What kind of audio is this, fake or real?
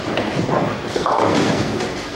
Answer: fake